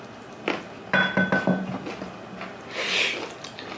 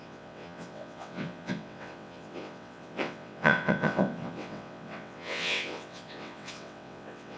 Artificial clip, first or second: second